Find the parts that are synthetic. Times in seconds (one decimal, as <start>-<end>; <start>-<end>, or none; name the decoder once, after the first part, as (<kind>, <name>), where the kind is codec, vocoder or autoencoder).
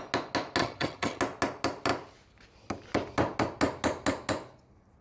0.6-1.2 (vocoder, HiFi-GAN)